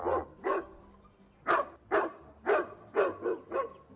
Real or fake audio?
real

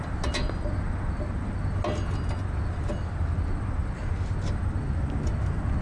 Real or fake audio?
real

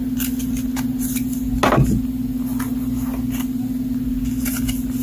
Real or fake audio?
real